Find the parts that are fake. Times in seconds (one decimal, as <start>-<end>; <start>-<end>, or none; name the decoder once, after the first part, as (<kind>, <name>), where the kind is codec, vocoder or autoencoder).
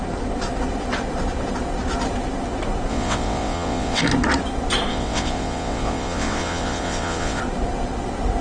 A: 2.9-4.0 (vocoder, WaveNeXt); 4.9-7.4